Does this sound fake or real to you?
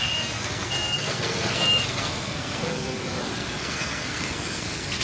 fake